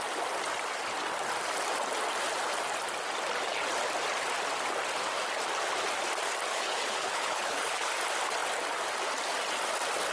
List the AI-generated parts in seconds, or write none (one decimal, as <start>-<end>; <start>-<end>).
6.5-7.9